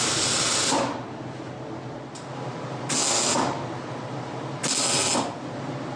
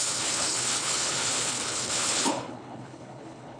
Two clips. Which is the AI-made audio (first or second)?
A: second